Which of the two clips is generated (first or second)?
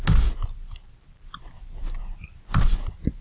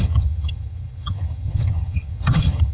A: second